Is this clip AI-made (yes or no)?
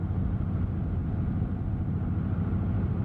no